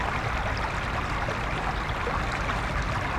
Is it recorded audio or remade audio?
recorded